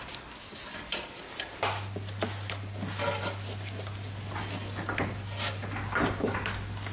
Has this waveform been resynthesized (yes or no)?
no